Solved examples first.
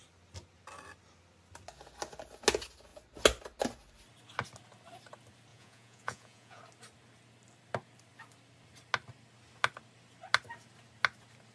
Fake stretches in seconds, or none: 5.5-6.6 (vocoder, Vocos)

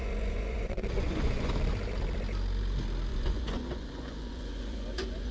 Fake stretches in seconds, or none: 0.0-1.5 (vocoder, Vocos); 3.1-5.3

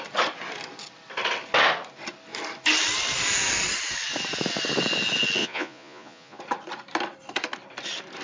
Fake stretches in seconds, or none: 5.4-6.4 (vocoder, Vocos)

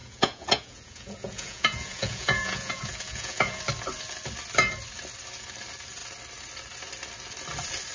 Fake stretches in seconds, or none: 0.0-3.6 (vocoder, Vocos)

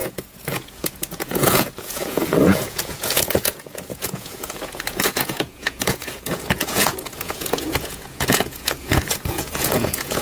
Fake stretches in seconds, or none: 0.0-10.2 (vocoder, Vocos)

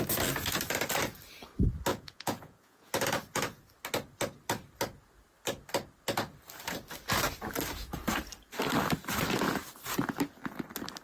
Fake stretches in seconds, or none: 1.9-2.9 (vocoder, Vocos)

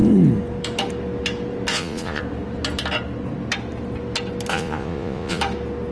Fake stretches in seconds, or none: 1.7-2.2 (vocoder, Vocos); 4.5-5.4

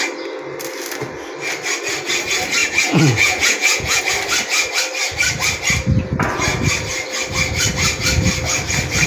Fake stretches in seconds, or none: 2.6-4.0 (vocoder, Vocos)